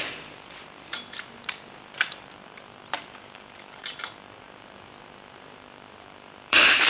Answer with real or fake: fake